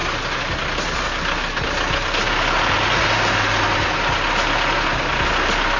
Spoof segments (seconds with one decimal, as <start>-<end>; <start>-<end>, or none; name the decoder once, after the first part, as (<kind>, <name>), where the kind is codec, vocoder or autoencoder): none